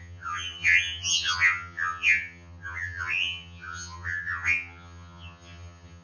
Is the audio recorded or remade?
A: remade